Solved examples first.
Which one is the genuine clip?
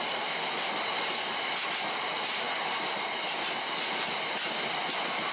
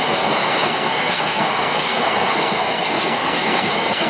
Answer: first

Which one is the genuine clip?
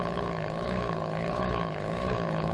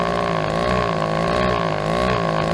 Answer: second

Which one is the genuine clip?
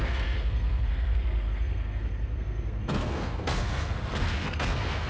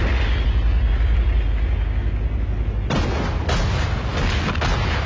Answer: second